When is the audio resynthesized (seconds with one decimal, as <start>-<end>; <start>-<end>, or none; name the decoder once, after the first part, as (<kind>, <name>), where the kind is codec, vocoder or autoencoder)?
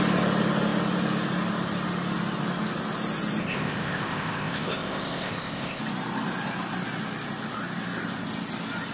3.4-5.8 (codec, ZipCodec)